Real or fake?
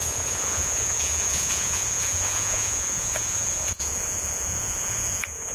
fake